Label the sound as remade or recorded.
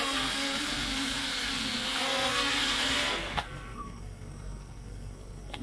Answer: remade